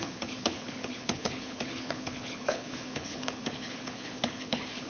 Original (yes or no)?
no